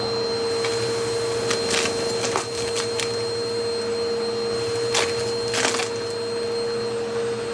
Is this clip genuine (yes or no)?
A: yes